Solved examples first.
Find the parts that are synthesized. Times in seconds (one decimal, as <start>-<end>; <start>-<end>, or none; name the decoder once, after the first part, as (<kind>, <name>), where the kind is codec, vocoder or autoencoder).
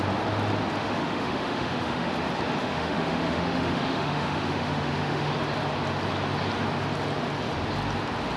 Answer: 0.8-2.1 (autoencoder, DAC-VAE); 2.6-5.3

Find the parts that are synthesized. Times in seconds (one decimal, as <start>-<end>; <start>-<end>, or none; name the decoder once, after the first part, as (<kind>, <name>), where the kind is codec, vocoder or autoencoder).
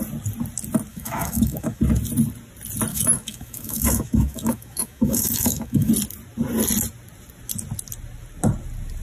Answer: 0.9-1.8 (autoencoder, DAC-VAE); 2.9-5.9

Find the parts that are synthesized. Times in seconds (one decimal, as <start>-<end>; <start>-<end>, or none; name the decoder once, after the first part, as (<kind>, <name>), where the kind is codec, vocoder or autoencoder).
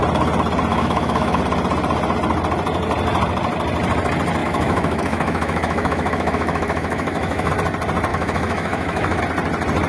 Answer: 0.7-1.4 (autoencoder, DAC-VAE); 4.4-7.5; 8.1-9.2